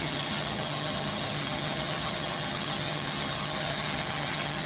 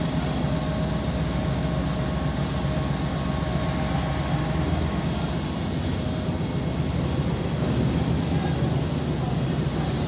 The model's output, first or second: first